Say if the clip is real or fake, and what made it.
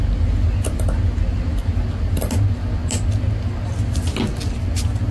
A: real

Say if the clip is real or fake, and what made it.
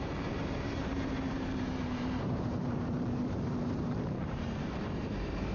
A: fake, vocoder, BigVGAN v2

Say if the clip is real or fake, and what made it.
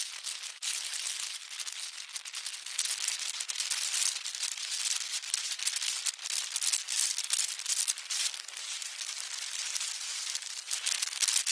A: real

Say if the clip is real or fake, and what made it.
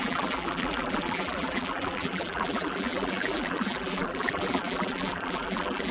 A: fake, vocoder, BigVGAN v2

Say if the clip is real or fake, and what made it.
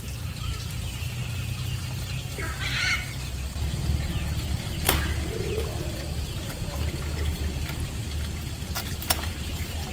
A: real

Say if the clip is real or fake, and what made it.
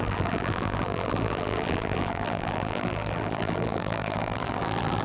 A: fake, vocoder, BigVGAN v2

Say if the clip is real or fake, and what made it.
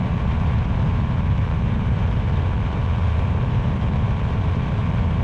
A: fake, vocoder, BigVGAN v2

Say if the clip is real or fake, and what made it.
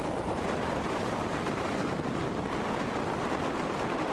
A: fake, vocoder, BigVGAN v2